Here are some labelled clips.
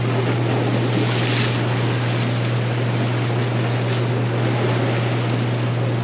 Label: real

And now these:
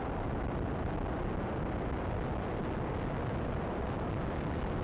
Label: real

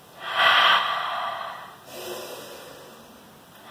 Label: real